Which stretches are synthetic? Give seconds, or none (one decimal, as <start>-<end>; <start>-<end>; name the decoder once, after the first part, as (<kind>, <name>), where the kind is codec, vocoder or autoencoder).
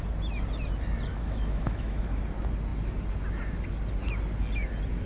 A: 1.1-2.2 (autoencoder, DAC-VAE)